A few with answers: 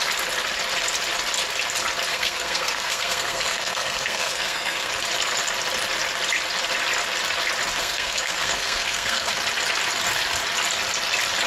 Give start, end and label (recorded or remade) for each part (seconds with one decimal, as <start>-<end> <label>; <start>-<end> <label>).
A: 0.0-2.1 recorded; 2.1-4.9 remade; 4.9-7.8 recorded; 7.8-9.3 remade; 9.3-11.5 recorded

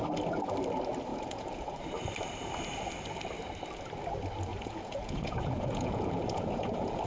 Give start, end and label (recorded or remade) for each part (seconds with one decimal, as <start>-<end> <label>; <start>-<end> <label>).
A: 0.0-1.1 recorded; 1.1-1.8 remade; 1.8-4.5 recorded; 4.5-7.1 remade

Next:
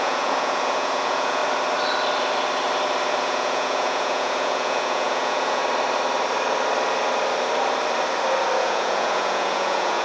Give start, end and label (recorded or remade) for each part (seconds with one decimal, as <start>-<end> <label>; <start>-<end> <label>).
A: 0.0-1.4 remade; 1.4-3.1 recorded; 3.1-5.6 remade; 5.6-8.6 recorded; 8.6-10.0 remade